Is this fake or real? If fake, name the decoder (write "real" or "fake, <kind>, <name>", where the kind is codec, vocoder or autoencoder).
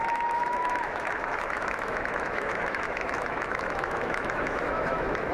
fake, autoencoder, DAC-VAE